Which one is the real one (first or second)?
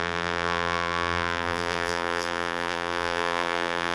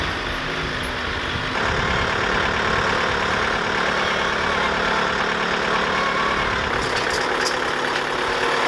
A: second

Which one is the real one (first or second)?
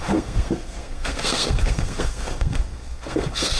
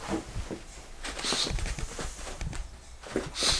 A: second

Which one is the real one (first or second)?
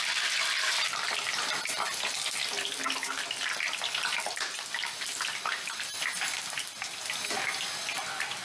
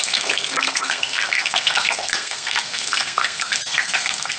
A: first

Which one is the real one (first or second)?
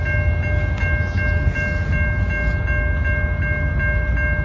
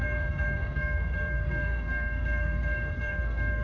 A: first